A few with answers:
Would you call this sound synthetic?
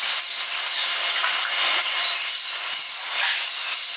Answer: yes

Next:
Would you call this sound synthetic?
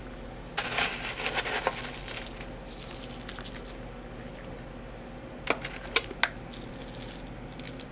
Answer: no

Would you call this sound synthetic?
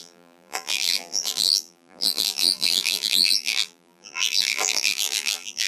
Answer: yes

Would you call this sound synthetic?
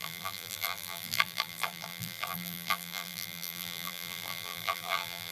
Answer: yes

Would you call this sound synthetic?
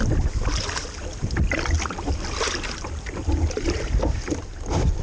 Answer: yes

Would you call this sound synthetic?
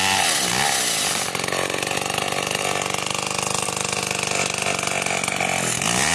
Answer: no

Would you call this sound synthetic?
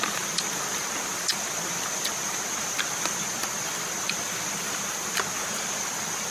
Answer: no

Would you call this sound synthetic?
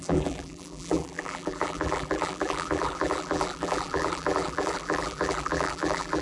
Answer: yes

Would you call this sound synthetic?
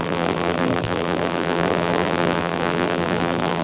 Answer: yes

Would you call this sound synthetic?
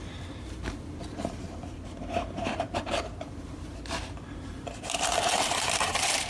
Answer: yes